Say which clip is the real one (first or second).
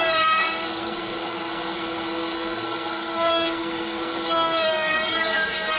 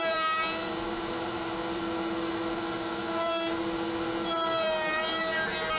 second